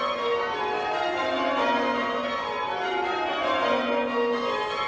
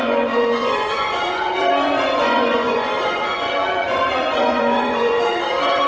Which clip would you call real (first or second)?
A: first